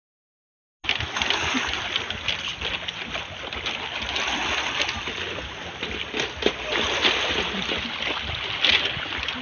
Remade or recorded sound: recorded